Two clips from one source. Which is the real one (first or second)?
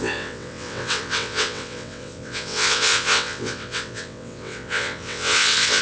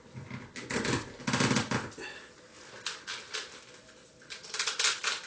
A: second